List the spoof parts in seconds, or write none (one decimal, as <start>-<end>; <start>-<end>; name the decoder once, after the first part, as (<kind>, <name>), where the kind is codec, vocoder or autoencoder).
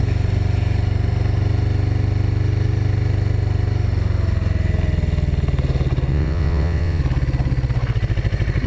6.1-7.0 (vocoder, WaveNeXt)